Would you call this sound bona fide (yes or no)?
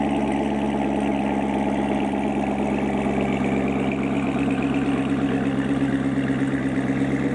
yes